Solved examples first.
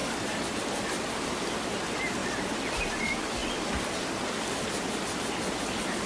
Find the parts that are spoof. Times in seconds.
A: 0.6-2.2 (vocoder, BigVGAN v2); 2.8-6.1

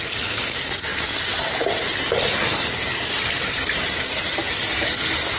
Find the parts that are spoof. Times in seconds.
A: none

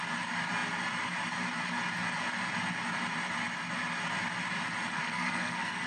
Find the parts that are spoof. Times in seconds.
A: 4.9-5.9 (codec, SNAC)

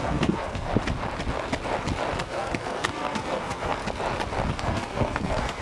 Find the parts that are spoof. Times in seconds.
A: 0.0-0.7 (codec, SNAC); 2.2-3.8; 4.5-5.6

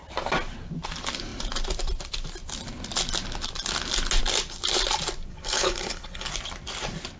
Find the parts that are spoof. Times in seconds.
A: 5.3-6.3 (codec, HILCodec)

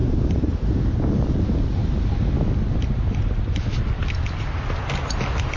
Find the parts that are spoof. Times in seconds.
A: none

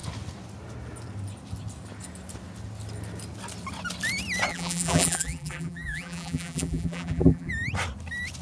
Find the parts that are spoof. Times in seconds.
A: 4.5-7.5 (vocoder, BigVGAN v2)